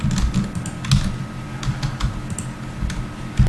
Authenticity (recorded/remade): recorded